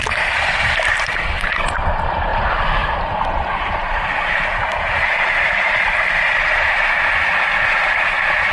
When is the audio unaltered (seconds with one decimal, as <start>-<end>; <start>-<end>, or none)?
0.0-2.3; 7.1-8.5